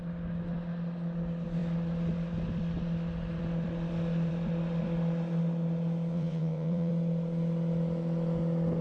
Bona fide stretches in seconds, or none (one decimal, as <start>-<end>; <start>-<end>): 0.0-6.1; 6.9-8.8